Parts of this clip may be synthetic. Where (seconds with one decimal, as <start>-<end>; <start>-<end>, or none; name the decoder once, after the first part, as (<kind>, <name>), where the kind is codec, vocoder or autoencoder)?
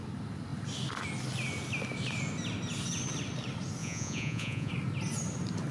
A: 3.8-4.7 (vocoder, Vocos)